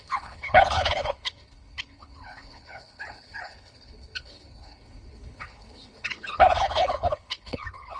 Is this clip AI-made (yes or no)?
yes